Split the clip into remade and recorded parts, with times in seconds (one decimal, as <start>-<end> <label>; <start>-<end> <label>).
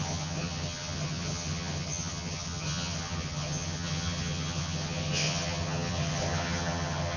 0.0-7.2 remade